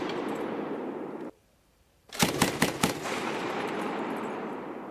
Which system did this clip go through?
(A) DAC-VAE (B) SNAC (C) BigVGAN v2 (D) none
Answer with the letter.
C